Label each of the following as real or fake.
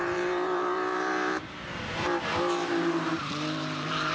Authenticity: fake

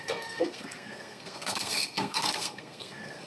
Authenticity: fake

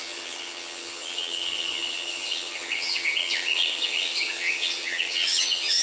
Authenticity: fake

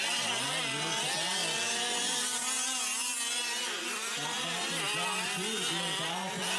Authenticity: real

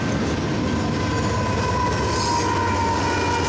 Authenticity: real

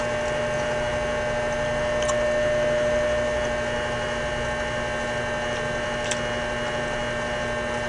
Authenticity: real